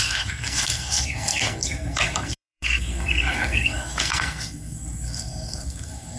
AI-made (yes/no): yes